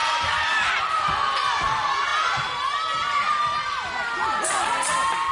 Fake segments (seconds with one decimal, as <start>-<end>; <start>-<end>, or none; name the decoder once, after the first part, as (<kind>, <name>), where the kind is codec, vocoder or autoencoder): 0.8-5.3 (vocoder, BigVGAN v2)